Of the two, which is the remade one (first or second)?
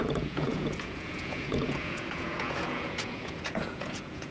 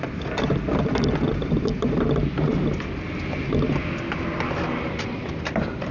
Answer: first